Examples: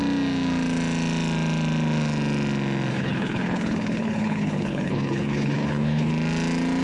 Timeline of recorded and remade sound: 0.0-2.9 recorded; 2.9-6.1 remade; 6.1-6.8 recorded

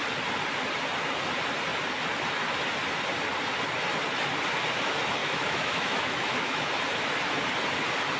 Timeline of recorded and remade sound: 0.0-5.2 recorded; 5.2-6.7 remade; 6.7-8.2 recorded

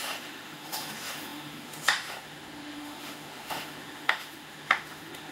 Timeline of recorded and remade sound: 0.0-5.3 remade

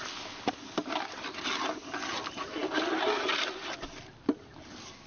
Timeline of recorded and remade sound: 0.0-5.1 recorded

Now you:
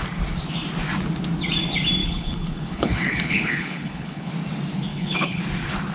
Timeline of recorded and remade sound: 0.0-2.0 recorded; 2.0-4.3 remade; 4.3-4.9 recorded; 4.9-5.4 remade; 5.4-5.9 recorded